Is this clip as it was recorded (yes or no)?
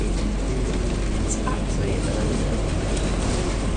yes